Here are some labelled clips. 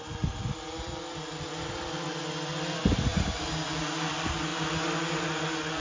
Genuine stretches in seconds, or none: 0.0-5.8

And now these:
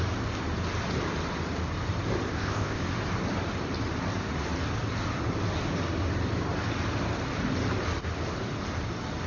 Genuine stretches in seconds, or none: 0.0-2.3; 2.8-9.3

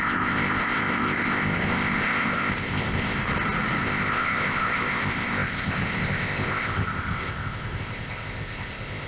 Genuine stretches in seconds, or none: 3.2-3.8

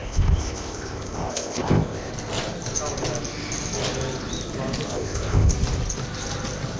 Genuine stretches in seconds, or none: 2.1-4.9; 5.5-6.8